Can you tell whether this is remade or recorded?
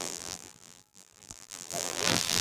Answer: remade